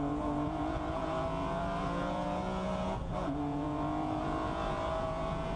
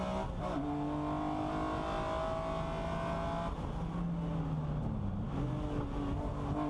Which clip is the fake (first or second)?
first